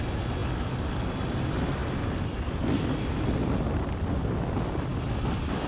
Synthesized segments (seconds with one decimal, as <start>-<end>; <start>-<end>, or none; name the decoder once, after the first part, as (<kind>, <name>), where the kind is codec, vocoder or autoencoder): none